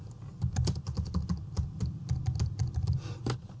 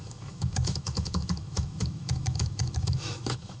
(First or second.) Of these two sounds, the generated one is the second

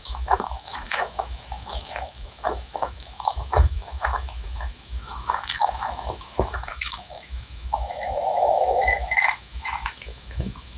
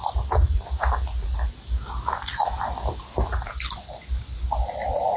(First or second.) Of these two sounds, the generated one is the first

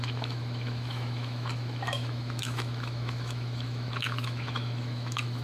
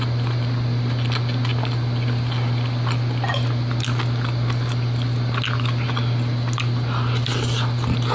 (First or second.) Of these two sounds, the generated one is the first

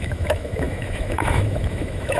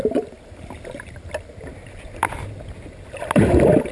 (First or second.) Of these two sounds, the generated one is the first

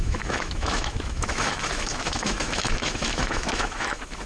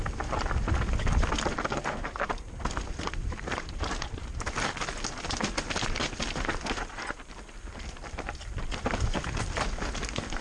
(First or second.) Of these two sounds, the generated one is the first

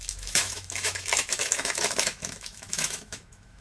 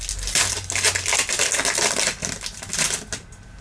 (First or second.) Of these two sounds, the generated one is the first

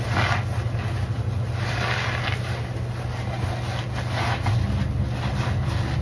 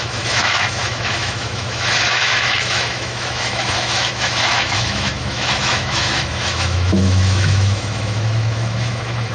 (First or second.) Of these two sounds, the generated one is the second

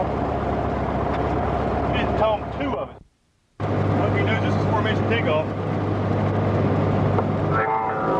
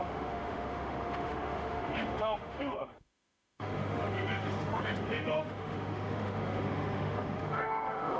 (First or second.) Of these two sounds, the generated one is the second